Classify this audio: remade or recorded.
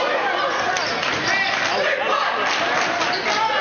recorded